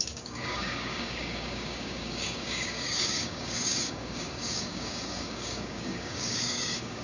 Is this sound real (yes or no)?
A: no